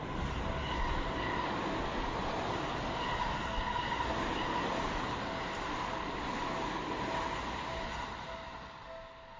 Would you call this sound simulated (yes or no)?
no